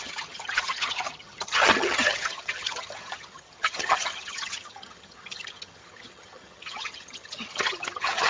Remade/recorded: remade